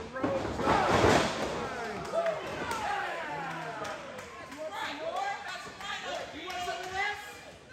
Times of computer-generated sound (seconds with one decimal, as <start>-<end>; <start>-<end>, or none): 2.5-5.5